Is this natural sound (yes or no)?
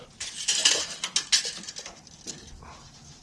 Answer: yes